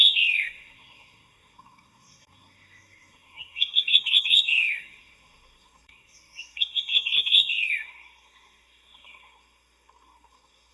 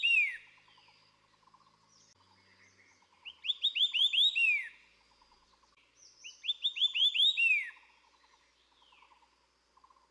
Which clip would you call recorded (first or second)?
second